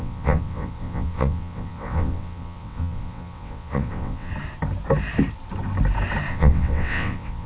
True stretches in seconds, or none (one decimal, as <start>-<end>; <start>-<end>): 4.3-6.3